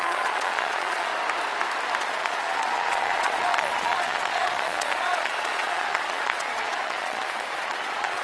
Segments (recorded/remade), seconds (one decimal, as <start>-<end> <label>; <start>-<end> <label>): 0.0-1.1 remade; 1.1-2.0 recorded; 2.0-8.2 remade